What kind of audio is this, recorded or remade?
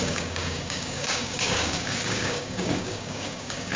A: remade